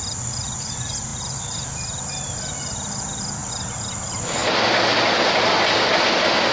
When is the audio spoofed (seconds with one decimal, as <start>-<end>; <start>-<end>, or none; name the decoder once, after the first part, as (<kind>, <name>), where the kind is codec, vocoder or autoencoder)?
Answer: none